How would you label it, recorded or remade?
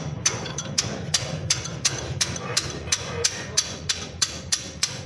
remade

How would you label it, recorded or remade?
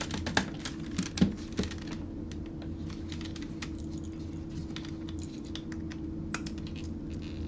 recorded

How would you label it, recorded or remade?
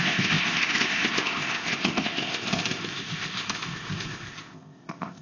remade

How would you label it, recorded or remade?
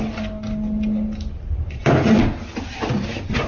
recorded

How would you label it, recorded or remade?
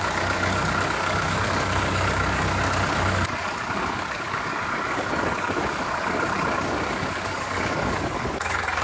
remade